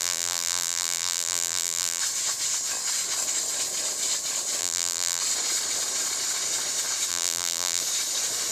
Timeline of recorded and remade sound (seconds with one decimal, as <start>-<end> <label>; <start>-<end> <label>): 0.0-2.0 remade; 2.0-4.6 recorded; 4.6-5.2 remade; 5.2-7.1 recorded; 7.1-7.8 remade; 7.8-8.5 recorded